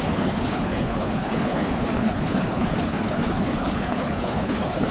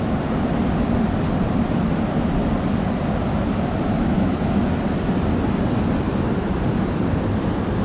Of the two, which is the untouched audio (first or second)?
second